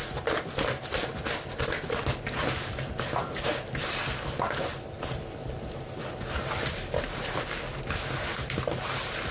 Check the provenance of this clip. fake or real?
real